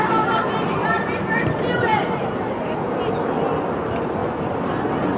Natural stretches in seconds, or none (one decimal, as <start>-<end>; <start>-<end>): 0.0-0.8; 3.7-5.2